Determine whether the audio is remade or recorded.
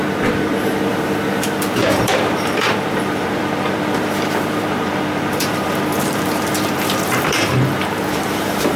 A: remade